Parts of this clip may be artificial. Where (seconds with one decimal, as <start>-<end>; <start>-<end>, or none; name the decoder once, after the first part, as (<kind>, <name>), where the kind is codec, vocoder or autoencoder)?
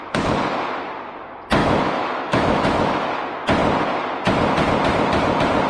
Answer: 1.6-3.2 (autoencoder, DAC-VAE)